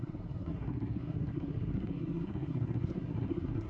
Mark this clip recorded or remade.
remade